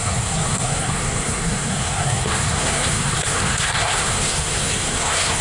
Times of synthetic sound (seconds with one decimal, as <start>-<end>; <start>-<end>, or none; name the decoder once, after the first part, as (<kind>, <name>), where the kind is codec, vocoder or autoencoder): 0.0-5.4 (codec, SNAC)